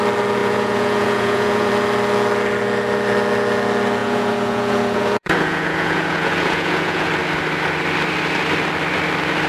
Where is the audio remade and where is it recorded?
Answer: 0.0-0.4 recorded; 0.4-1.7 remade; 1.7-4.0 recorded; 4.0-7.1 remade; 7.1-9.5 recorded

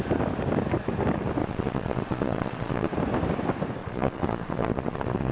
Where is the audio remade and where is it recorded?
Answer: 0.0-1.4 recorded; 1.4-2.9 remade; 2.9-3.8 recorded; 3.8-5.3 remade

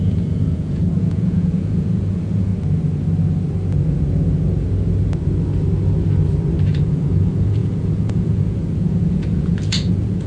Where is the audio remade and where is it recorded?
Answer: 0.0-2.5 remade; 2.5-6.6 recorded; 6.6-10.3 remade

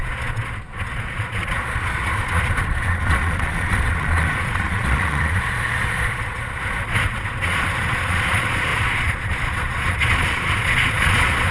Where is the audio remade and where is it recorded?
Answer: 0.0-11.5 remade